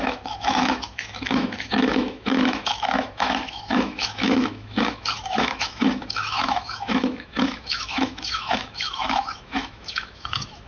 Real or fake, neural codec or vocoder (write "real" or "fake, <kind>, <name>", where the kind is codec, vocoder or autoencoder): fake, autoencoder, DAC-VAE